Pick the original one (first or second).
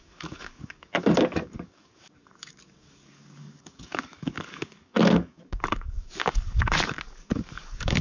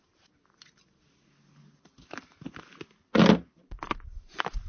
second